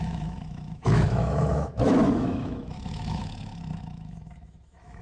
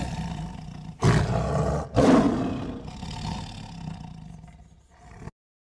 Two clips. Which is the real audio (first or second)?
second